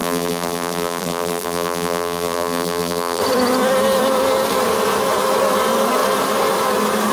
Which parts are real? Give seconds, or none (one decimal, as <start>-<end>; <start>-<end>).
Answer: 3.2-7.1